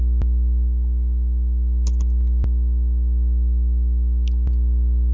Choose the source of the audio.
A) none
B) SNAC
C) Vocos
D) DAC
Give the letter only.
A